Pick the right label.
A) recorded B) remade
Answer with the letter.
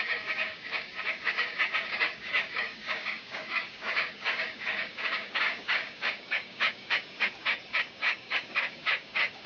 B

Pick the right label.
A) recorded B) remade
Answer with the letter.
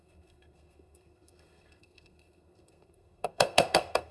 B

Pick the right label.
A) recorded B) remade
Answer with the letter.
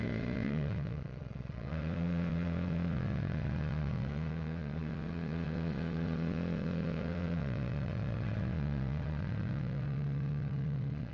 B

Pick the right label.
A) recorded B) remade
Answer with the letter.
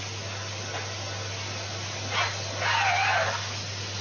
A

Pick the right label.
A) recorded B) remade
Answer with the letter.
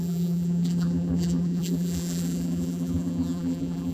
B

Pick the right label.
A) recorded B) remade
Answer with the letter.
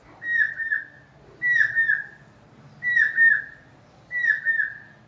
A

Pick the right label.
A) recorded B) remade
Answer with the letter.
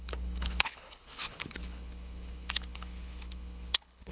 B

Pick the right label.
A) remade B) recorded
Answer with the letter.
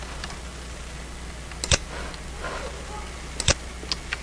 B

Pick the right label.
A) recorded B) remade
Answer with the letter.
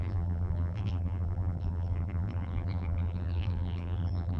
B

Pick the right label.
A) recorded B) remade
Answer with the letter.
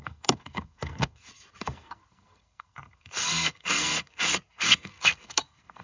B